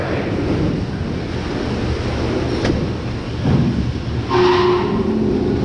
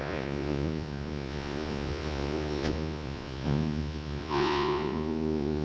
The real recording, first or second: first